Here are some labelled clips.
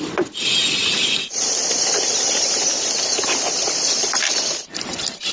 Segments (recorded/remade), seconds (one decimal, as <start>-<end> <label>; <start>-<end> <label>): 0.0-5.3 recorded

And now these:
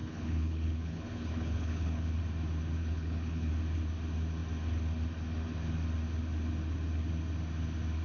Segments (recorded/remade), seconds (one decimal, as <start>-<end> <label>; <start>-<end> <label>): 0.0-2.2 remade; 2.2-2.8 recorded; 2.8-3.5 remade; 3.5-8.0 recorded

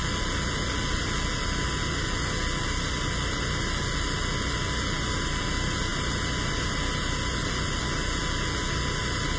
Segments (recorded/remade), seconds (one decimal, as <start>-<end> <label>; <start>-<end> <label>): 0.0-9.4 recorded

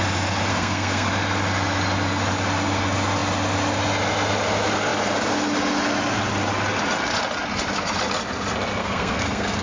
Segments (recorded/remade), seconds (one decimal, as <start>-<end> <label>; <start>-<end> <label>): 0.0-0.5 recorded; 0.5-1.1 remade; 1.1-8.8 recorded; 8.8-9.6 remade

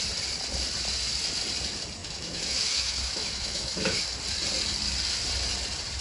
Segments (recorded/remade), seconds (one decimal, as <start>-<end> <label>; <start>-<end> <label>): 0.0-2.0 recorded; 2.0-4.0 remade; 4.0-6.0 recorded

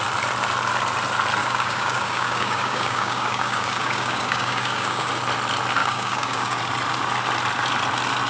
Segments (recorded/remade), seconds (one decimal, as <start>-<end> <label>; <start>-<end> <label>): 0.0-1.4 recorded; 1.4-5.1 remade; 5.1-5.8 recorded; 5.8-6.6 remade; 6.6-8.3 recorded

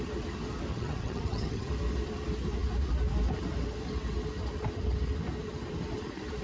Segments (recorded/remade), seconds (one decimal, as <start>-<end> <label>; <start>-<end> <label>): 0.0-0.7 recorded; 0.7-1.7 remade; 1.7-6.4 recorded